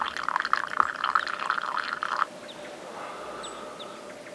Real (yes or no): yes